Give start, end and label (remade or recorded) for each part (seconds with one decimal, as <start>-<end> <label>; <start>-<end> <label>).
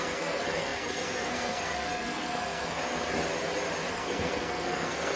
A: 0.0-2.8 remade; 2.8-3.9 recorded; 3.9-5.2 remade